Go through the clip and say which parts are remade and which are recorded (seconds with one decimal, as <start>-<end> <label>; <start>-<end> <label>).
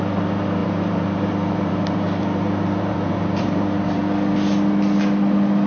0.0-0.6 recorded; 0.6-4.0 remade; 4.0-5.7 recorded